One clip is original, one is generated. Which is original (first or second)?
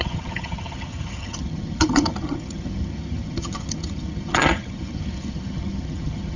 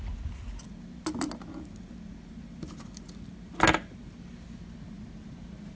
second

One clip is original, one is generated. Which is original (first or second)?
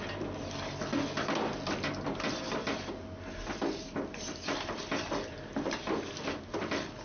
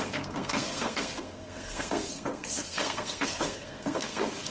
first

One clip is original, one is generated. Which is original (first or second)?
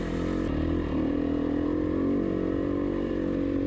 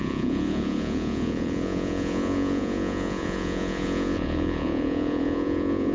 first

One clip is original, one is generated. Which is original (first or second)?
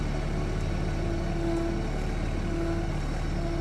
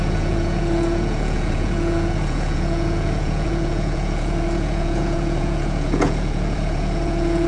first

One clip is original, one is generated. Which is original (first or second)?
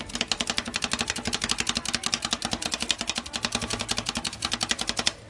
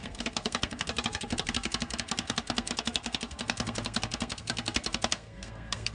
first